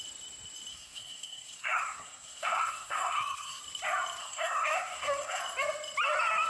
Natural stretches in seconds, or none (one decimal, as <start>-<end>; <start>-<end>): 0.0-0.7; 3.6-4.2; 5.4-6.5